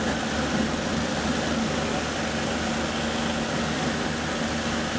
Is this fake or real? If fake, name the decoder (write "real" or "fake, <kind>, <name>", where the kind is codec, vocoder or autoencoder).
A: real